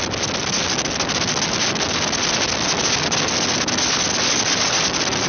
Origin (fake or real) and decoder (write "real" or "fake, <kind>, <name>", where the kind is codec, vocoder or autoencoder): real